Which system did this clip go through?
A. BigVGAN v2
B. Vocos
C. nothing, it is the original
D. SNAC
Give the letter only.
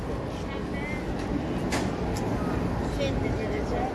C